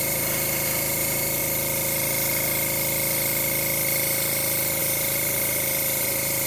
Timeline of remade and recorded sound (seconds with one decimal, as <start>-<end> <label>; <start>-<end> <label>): 0.0-1.4 remade; 1.4-4.8 recorded; 4.8-6.5 remade